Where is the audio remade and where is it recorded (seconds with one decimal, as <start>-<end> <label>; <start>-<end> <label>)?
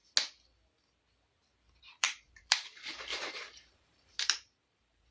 0.0-1.8 recorded; 1.8-5.1 remade